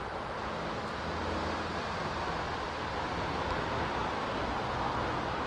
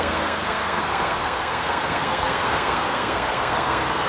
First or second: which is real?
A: first